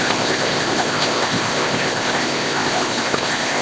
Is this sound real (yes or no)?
no